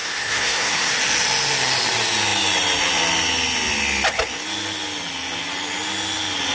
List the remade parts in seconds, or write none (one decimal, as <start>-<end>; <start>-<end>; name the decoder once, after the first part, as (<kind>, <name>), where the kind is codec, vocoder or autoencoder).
0.0-0.9 (codec, SNAC)